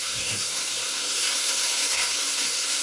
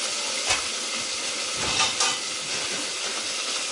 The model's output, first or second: first